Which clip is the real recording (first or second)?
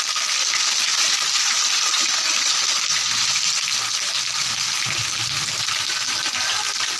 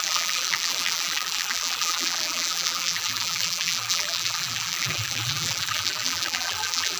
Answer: first